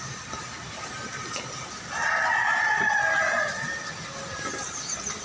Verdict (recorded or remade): recorded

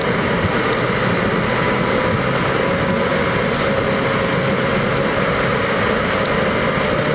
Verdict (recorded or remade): recorded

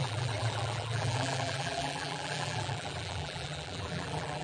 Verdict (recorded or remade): remade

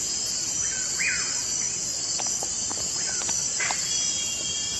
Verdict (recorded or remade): recorded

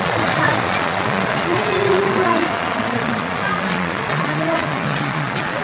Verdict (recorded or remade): remade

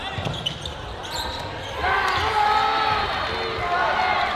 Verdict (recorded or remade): recorded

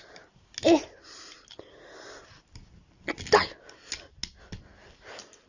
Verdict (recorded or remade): recorded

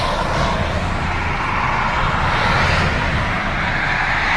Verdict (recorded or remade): recorded